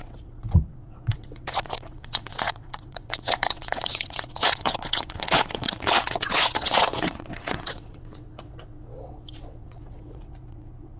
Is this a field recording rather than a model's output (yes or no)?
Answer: no